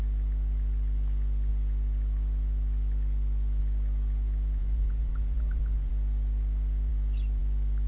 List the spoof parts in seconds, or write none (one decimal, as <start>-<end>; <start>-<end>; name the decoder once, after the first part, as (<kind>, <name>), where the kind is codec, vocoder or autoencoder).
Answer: 4.6-5.9 (vocoder, Vocos)